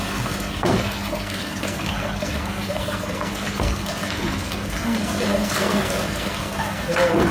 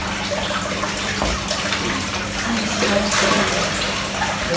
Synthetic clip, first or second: first